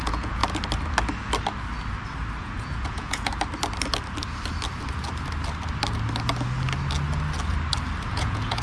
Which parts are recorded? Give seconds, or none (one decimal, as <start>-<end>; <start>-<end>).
0.4-2.4; 3.3-8.1